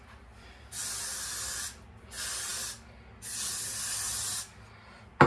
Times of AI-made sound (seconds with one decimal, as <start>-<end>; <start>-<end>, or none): none